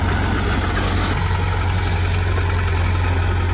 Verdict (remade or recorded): recorded